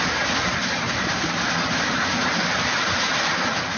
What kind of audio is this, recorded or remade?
recorded